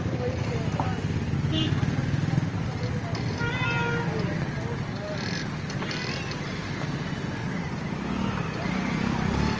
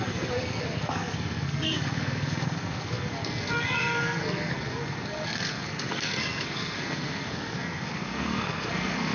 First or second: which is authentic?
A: first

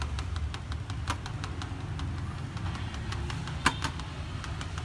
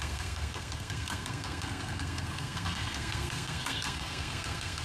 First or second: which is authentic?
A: first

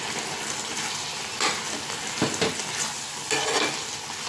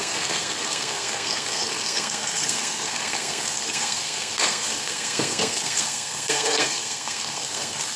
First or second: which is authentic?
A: first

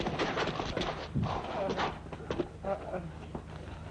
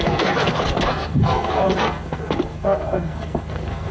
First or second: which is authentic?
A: first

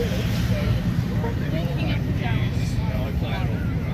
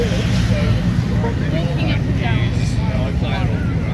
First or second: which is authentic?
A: second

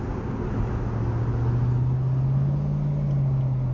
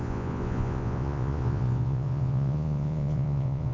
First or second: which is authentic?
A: first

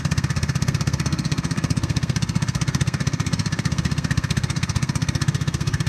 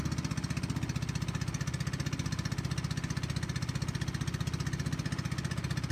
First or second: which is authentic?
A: second